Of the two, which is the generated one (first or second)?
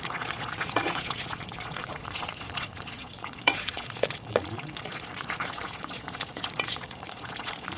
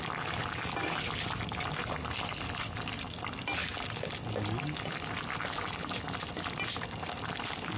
first